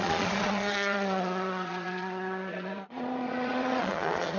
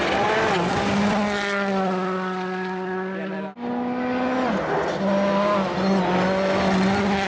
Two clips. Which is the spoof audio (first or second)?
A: first